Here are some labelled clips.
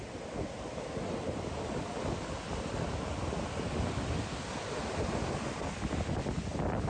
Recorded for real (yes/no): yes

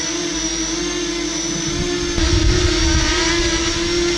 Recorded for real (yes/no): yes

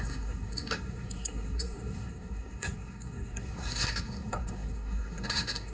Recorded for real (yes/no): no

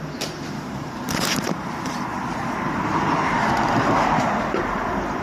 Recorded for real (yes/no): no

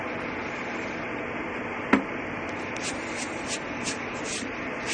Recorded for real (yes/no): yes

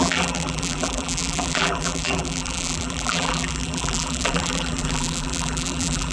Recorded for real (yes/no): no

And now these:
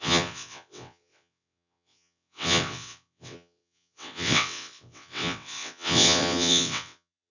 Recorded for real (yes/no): no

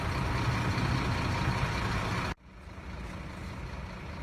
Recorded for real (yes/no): yes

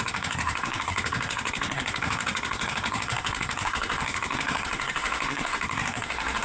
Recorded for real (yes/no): no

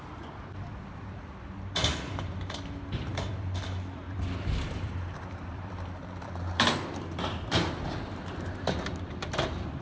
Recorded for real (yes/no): no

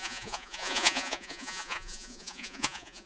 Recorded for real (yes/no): no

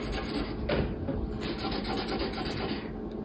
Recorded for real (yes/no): yes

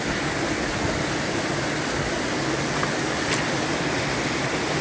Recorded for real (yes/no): yes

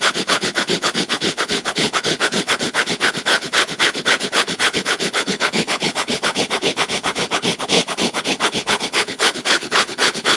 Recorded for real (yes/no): no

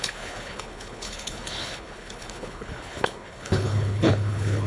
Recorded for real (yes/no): no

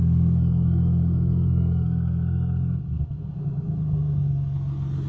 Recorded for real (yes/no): no